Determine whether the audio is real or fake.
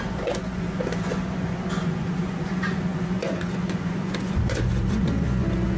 fake